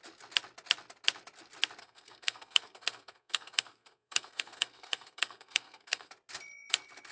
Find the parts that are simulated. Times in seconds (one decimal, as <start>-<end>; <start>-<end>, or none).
1.8-6.1